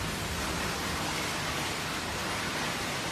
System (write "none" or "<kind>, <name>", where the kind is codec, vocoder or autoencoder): none